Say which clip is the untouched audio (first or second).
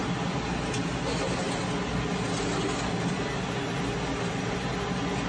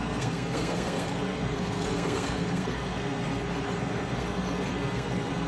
first